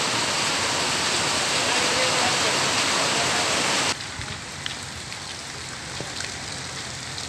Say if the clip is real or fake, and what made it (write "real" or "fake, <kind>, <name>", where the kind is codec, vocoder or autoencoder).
real